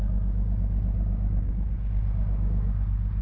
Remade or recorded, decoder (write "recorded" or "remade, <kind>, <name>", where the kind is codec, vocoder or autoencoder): remade, codec, DAC